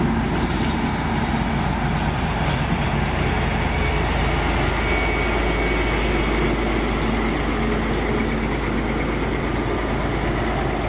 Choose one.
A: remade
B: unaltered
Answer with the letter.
B